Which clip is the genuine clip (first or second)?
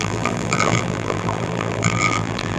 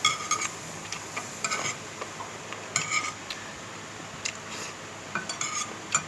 second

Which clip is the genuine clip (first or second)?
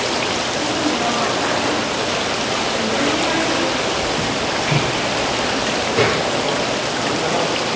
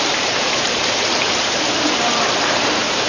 first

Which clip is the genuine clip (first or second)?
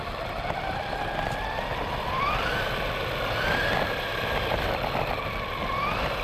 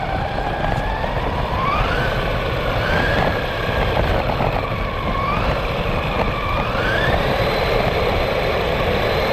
first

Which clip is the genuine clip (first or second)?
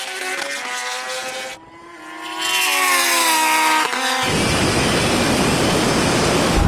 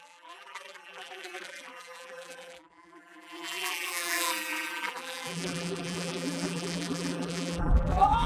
first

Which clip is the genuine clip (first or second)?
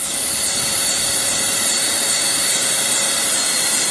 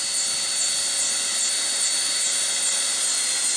second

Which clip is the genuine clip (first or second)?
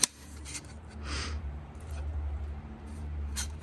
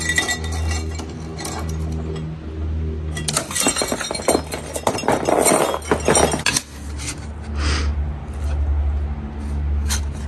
second